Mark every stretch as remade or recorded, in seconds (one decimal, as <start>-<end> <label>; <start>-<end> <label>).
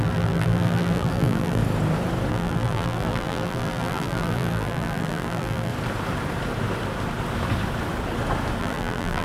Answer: 0.0-1.6 remade; 1.6-2.3 recorded; 2.3-5.7 remade; 5.7-8.6 recorded; 8.6-9.2 remade